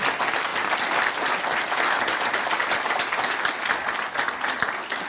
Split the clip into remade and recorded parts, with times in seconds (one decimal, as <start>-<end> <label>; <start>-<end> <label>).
0.0-5.1 recorded